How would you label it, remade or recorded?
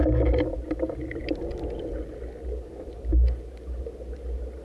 recorded